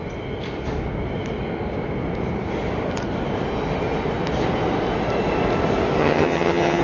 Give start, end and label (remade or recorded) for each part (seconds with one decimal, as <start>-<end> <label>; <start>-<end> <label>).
0.0-6.0 recorded; 6.0-6.8 remade